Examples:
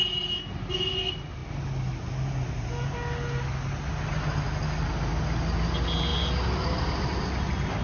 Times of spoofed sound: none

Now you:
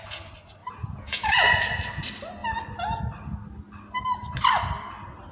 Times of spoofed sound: 0.6-1.5 (vocoder, Vocos)

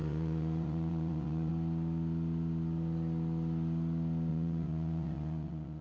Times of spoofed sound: 0.0-1.5 (vocoder, Vocos); 4.3-5.8

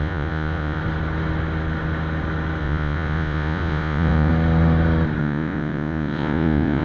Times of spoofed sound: 0.0-0.8 (vocoder, Vocos); 2.6-4.3; 5.2-6.8

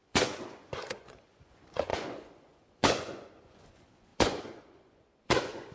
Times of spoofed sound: 0.0-5.7 (vocoder, Vocos)